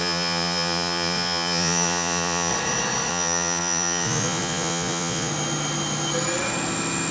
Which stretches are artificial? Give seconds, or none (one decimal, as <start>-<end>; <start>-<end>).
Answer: 0.0-2.5; 3.1-5.3